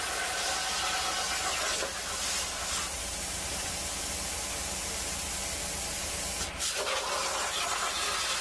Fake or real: real